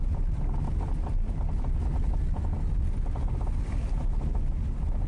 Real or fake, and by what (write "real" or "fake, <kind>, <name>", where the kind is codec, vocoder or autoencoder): real